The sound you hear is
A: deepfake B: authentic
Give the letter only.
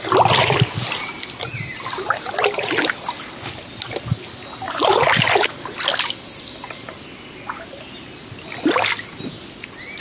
B